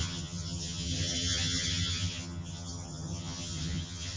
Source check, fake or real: fake